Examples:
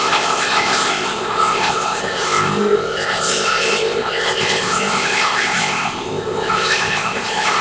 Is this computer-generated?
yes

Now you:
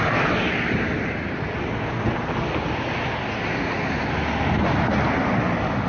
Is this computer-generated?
no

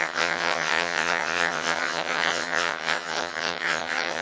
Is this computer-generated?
yes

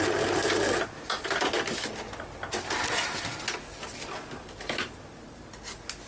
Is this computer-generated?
no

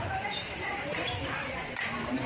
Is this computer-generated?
yes